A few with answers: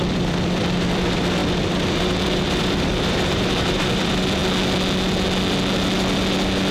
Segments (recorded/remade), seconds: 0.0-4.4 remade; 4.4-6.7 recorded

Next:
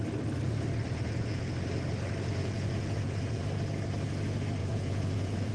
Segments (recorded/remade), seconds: 0.0-0.9 recorded; 0.9-1.5 remade; 1.5-2.4 recorded; 2.4-3.4 remade; 3.4-4.6 recorded; 4.6-5.5 remade

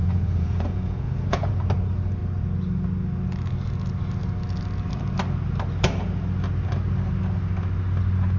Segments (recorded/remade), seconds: 0.0-1.5 remade; 1.5-8.4 recorded

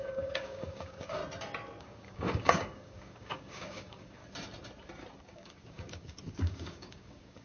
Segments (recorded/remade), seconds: 0.0-1.2 remade; 1.2-1.8 recorded; 1.8-4.2 remade; 4.2-5.2 recorded; 5.2-7.4 remade

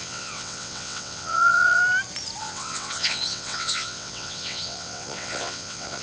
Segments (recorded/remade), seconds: 0.0-1.8 remade; 1.8-2.4 recorded; 2.4-6.0 remade

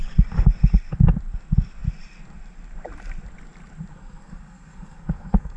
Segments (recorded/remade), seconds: 0.0-3.9 recorded; 3.9-5.6 remade

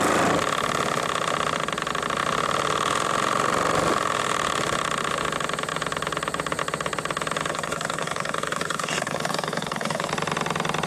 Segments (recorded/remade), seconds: 0.0-7.5 recorded; 7.5-10.1 remade; 10.1-10.9 recorded